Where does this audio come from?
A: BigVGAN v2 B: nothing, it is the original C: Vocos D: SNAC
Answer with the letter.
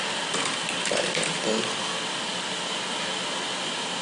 B